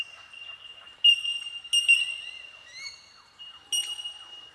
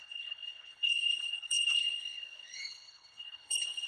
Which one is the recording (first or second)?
first